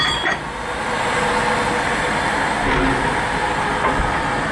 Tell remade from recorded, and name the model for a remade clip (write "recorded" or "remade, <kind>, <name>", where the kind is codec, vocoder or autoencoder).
recorded